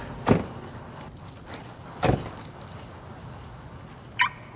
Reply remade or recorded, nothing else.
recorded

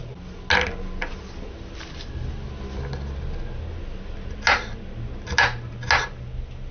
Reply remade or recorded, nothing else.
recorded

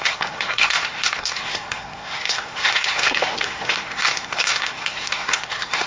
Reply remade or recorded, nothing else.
remade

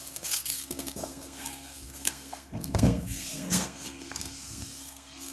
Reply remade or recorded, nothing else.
remade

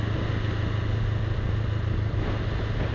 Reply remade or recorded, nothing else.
recorded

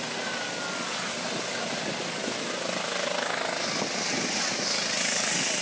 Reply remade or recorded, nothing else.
recorded